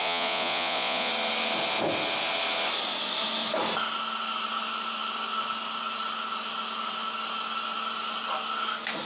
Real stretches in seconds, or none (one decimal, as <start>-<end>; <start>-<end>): 1.1-9.1